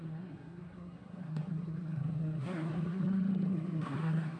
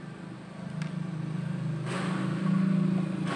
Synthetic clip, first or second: first